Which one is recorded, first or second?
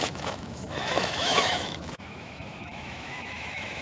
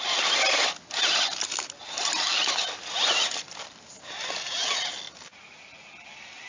second